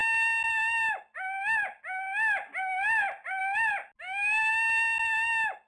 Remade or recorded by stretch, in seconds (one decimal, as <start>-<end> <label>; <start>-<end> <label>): 0.0-5.7 recorded